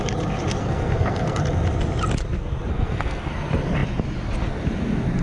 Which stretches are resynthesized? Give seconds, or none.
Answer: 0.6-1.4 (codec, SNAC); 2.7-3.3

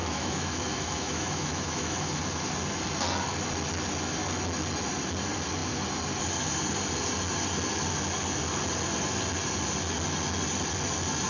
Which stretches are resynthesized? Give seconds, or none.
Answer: 0.0-2.2 (autoencoder, DAC-VAE)

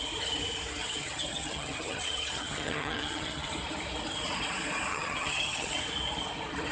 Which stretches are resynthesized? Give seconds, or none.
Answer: 0.8-3.5 (vocoder, HiFi-GAN); 4.9-5.8

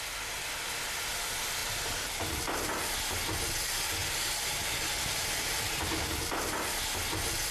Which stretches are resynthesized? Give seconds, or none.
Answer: 1.6-2.4 (vocoder, BigVGAN v2)

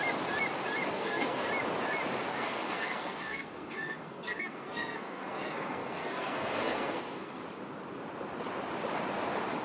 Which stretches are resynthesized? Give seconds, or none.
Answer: 0.9-1.5 (codec, SNAC); 2.3-7.4

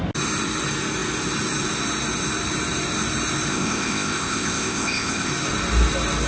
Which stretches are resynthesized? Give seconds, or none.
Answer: 3.5-5.3 (codec, ZipCodec)

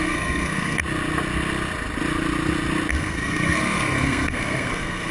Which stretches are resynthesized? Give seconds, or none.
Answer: 0.0-0.8 (codec, SNAC); 2.9-5.1